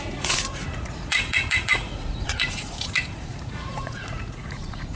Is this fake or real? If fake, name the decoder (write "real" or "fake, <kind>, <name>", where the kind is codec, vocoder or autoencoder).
fake, vocoder, Vocos